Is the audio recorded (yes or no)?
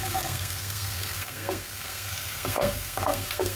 no